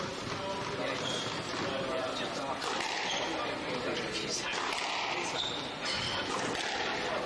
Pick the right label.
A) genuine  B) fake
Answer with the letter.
A